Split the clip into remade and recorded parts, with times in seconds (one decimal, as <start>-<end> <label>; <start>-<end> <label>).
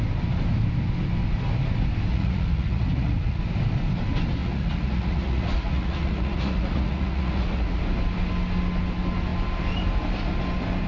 0.0-2.1 recorded; 2.1-3.4 remade; 3.4-4.4 recorded; 4.4-7.8 remade; 7.8-10.9 recorded